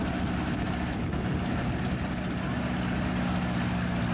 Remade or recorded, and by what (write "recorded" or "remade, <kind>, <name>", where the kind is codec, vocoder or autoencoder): recorded